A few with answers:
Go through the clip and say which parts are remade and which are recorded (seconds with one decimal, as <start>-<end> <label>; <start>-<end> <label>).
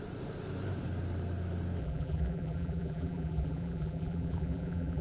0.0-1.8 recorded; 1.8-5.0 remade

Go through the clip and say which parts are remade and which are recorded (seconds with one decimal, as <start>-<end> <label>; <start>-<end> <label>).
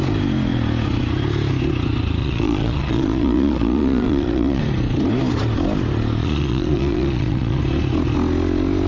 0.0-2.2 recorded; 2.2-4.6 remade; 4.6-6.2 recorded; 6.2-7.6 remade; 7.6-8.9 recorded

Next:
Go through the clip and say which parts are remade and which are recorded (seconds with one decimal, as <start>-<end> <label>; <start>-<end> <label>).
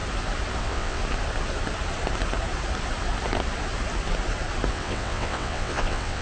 0.0-0.6 recorded; 0.6-1.0 remade; 1.0-4.7 recorded; 4.7-6.2 remade